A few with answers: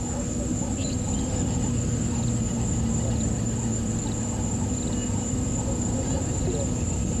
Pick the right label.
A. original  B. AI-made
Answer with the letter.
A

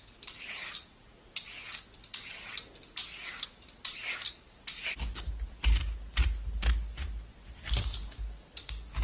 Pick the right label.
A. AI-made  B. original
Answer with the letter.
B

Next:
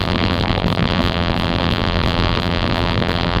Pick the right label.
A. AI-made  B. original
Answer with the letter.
A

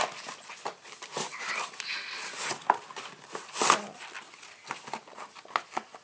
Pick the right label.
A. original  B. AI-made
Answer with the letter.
A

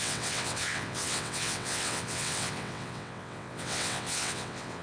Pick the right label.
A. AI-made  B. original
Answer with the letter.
A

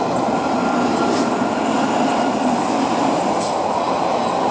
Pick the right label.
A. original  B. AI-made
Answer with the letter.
A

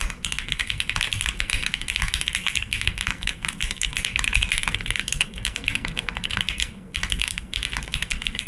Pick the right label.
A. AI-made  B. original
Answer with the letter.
A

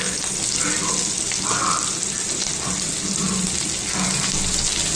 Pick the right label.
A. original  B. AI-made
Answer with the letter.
A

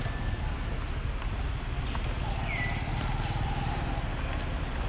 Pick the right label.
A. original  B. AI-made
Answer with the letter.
A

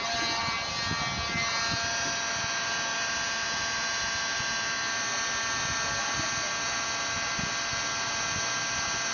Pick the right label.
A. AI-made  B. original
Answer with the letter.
B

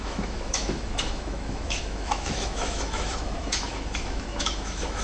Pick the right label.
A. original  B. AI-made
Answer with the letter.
B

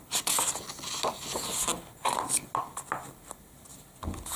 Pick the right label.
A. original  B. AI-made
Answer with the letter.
A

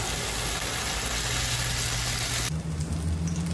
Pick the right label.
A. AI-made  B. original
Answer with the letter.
B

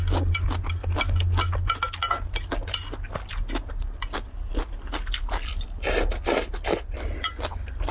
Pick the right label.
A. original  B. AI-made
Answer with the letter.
A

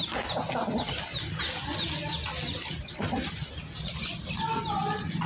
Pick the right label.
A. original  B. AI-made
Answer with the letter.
A